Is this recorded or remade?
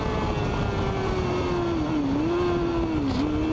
recorded